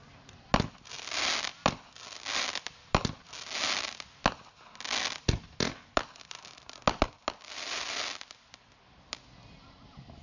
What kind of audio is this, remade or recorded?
recorded